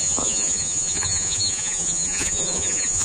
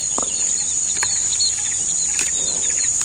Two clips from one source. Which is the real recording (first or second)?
second